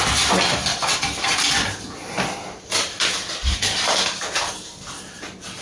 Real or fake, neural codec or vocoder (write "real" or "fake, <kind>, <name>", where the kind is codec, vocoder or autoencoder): real